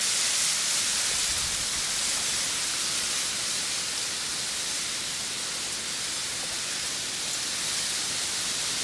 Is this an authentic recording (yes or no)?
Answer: yes